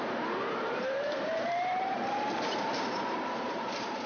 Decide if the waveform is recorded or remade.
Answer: remade